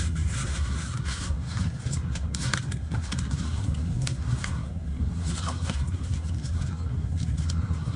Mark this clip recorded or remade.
remade